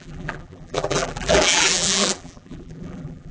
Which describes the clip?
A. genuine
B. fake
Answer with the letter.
B